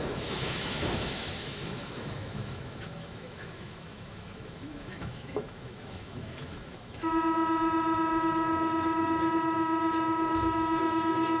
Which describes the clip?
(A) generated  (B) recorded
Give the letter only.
A